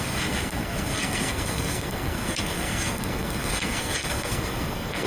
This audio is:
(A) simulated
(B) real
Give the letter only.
A